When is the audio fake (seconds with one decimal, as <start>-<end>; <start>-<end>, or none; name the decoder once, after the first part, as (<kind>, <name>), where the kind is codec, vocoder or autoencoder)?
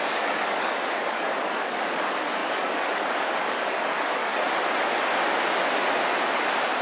0.0-4.3 (codec, DAC)